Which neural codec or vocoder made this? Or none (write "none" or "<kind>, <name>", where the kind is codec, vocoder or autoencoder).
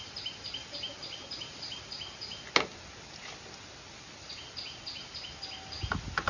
none